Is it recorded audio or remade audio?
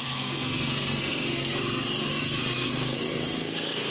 remade